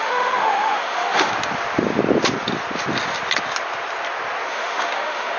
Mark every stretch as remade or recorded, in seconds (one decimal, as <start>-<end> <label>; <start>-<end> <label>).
0.0-1.3 remade; 1.3-4.5 recorded; 4.5-5.4 remade